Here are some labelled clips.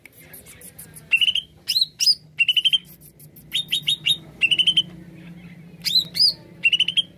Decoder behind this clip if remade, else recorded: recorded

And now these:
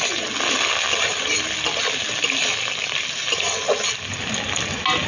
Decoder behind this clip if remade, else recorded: recorded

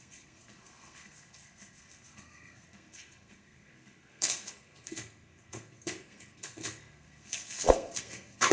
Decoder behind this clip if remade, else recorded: remade, codec, SNAC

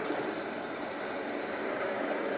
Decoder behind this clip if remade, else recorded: recorded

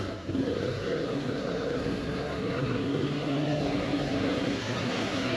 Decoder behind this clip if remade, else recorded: remade, codec, SNAC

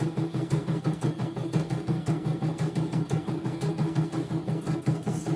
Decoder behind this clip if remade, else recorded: remade, codec, SNAC